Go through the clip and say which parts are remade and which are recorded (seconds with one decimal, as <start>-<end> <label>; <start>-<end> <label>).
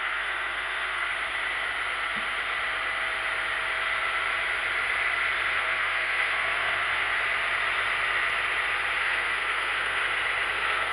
0.0-1.1 remade; 1.1-5.5 recorded; 5.5-7.1 remade; 7.1-9.0 recorded; 9.0-10.0 remade; 10.0-10.5 recorded; 10.5-10.9 remade